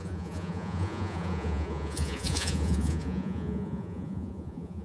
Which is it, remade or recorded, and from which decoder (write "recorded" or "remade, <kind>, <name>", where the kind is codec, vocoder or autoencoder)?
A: remade, vocoder, Vocos